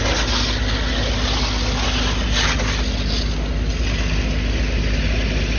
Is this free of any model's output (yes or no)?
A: yes